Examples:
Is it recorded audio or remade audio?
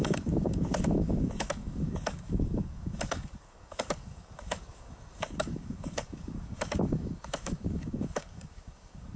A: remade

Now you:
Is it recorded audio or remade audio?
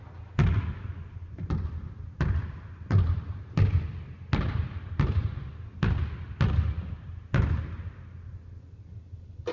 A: recorded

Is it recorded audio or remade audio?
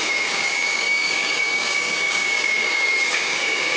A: remade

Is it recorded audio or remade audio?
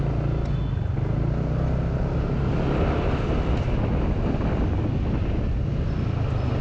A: recorded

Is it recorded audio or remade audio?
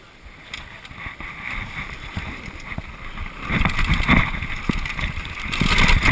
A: recorded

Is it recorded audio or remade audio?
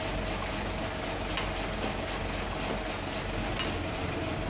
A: recorded